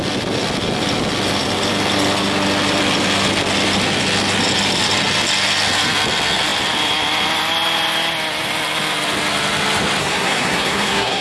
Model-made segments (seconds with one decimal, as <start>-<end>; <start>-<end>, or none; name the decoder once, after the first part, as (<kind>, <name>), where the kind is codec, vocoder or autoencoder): 10.0-11.2 (codec, SNAC)